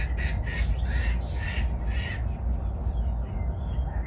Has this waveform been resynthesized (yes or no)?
no